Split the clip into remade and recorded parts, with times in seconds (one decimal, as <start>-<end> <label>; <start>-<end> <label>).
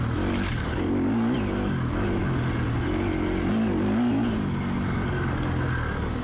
0.0-6.2 recorded